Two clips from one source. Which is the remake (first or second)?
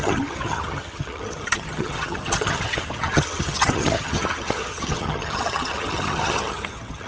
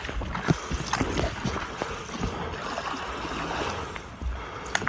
first